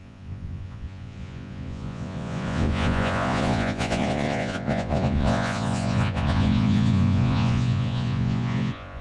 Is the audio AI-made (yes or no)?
yes